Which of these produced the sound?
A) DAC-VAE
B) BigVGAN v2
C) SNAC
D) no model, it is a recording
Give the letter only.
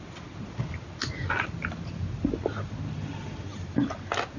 D